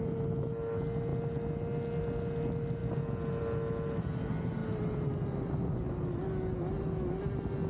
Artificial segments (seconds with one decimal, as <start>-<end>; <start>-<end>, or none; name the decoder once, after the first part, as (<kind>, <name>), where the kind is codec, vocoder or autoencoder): none